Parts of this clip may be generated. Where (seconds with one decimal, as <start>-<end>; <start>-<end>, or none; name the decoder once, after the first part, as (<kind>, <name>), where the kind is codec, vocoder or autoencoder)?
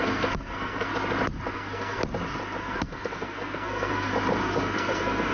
0.0-0.9 (codec, SNAC); 1.5-2.0; 2.6-4.1; 4.6-5.3